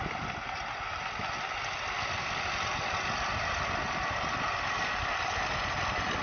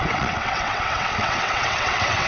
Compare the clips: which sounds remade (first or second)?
second